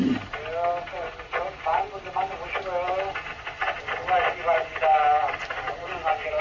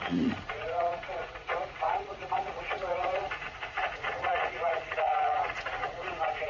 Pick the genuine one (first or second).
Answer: first